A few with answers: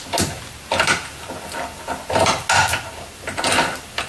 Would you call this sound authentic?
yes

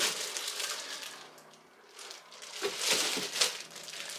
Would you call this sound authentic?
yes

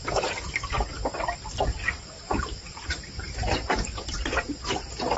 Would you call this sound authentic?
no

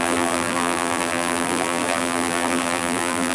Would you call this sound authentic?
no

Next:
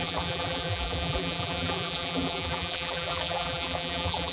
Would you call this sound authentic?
no